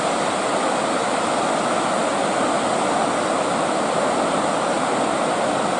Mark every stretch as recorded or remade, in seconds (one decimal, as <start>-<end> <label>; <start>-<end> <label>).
0.0-5.8 recorded